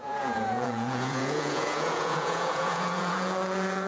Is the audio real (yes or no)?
no